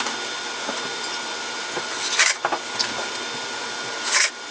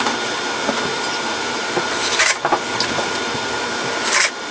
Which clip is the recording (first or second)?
first